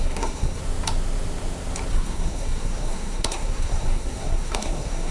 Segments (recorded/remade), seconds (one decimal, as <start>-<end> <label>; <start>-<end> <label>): 0.0-0.6 remade; 0.6-1.9 recorded; 1.9-5.1 remade